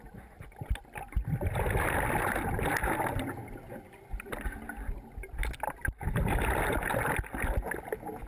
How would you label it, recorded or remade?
recorded